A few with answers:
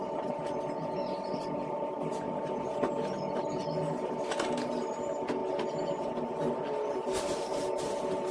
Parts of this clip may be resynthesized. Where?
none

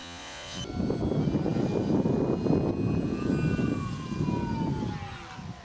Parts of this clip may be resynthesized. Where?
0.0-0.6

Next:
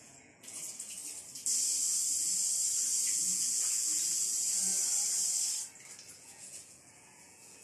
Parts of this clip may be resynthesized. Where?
0.0-1.0; 3.0-4.7; 6.1-7.6

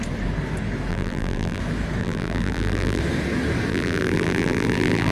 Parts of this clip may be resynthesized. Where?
0.9-1.6; 2.0-3.0; 3.7-5.1